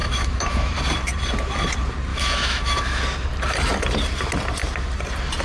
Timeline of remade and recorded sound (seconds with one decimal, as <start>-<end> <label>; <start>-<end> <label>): 0.0-0.7 remade; 0.7-2.1 recorded; 2.1-3.0 remade; 3.0-5.4 recorded